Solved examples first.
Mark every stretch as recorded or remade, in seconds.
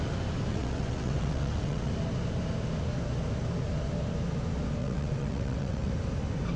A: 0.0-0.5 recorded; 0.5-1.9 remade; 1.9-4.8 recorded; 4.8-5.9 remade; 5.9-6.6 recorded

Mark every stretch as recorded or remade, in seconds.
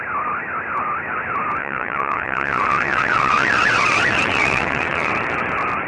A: 0.0-1.6 recorded; 1.6-5.1 remade; 5.1-5.9 recorded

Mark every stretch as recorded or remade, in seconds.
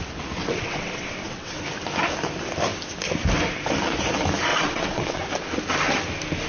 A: 0.0-0.4 recorded; 0.4-1.6 remade; 1.6-4.5 recorded; 4.5-5.2 remade; 5.2-6.5 recorded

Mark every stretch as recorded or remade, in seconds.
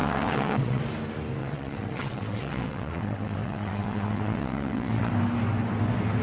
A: 0.0-0.8 remade; 0.8-1.4 recorded; 1.4-5.1 remade; 5.1-6.2 recorded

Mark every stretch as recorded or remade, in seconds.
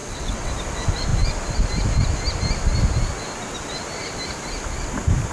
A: 0.0-0.5 remade; 0.5-5.3 recorded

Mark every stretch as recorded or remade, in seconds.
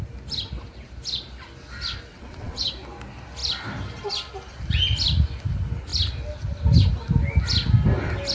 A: 0.0-2.1 recorded; 2.1-2.7 remade; 2.7-8.3 recorded